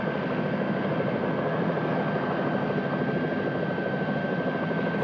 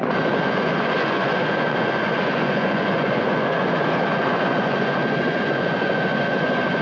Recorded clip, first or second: first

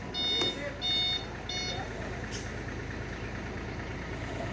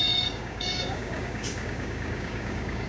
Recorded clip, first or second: first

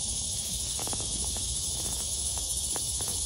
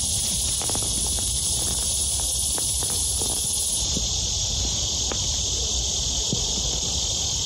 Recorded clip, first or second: second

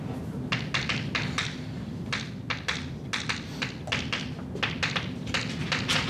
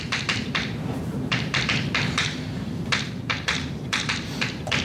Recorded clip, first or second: first